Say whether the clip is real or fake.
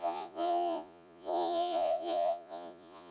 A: fake